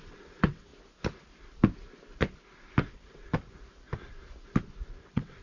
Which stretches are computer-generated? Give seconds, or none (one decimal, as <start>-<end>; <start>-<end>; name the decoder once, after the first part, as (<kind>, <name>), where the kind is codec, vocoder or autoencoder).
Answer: 0.0-0.7 (vocoder, WaveNeXt); 2.9-3.3; 4.9-5.4